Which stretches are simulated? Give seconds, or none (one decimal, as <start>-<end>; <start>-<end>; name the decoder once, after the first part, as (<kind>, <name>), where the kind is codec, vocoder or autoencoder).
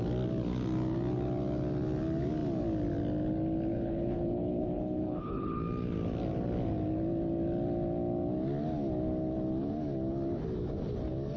3.7-5.6 (codec, HILCodec)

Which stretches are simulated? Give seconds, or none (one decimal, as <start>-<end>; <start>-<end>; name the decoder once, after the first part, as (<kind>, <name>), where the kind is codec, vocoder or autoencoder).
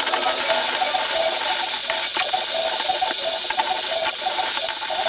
none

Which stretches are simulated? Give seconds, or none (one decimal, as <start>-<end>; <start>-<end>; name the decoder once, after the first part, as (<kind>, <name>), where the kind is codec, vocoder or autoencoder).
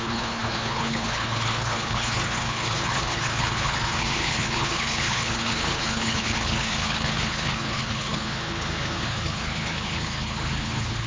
0.0-11.1 (codec, HILCodec)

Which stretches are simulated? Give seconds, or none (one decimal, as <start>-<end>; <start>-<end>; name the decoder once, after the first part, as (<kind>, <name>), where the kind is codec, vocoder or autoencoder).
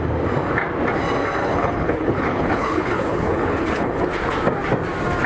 1.4-4.0 (codec, HILCodec)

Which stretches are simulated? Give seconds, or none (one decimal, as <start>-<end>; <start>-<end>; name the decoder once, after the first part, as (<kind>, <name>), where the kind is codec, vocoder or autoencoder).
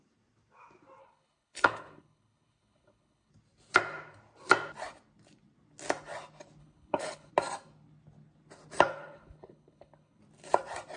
1.0-3.3 (codec, HILCodec); 6.6-7.3; 8.9-10.2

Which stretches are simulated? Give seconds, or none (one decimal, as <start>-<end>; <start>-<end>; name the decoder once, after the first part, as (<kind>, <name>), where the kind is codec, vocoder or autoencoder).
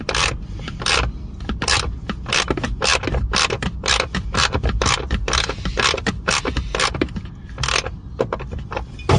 none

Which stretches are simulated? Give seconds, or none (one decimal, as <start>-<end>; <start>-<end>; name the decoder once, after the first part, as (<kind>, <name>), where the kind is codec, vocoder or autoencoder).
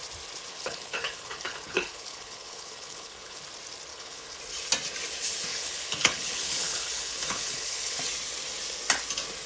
0.5-3.4 (codec, HILCodec); 3.9-4.4; 5.5-8.0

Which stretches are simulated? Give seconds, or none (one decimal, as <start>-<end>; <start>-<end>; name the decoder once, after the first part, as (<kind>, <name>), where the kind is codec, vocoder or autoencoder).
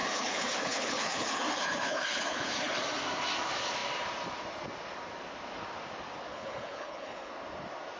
0.0-2.8 (codec, HILCodec); 6.3-7.3